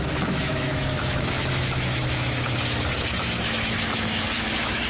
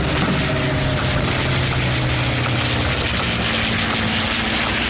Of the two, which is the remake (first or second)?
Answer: first